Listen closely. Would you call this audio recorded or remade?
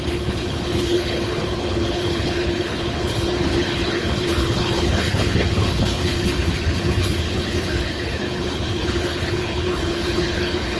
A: remade